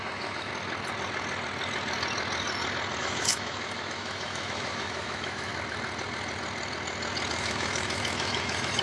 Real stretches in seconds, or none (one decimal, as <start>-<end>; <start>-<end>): 0.5-3.0; 5.5-7.3